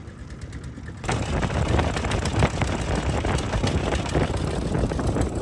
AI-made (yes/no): no